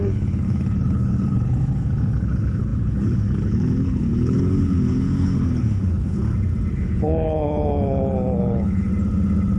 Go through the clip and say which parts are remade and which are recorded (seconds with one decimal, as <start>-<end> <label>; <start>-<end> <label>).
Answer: 0.0-6.2 remade; 6.2-6.7 recorded; 6.7-8.9 remade; 8.9-9.6 recorded